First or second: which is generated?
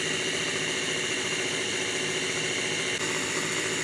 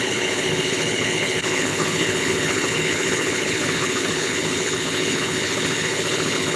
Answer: second